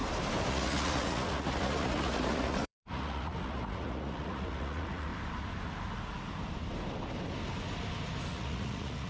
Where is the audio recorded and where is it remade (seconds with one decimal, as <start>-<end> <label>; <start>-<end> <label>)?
0.0-0.5 recorded; 0.5-5.1 remade; 5.1-8.3 recorded; 8.3-9.1 remade